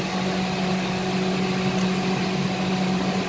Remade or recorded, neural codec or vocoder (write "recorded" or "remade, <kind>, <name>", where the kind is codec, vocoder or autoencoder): recorded